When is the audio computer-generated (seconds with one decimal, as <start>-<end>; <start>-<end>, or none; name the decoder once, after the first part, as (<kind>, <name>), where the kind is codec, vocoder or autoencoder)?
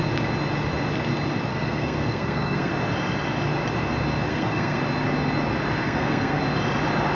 1.5-2.7 (codec, SNAC); 4.3-4.8; 5.8-6.4